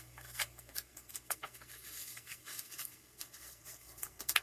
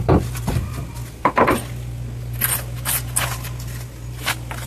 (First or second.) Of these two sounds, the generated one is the first